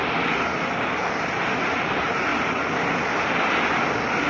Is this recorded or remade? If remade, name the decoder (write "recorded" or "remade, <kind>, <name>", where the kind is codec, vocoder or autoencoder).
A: recorded